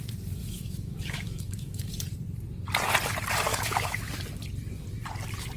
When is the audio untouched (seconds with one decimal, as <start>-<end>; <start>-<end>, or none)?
0.0-0.4; 1.9-3.5; 4.1-5.6